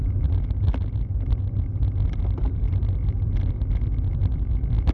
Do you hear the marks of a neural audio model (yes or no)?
no